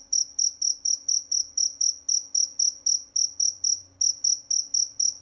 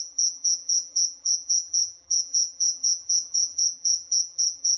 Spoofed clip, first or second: second